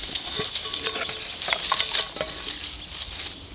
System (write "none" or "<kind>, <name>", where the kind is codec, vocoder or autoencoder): none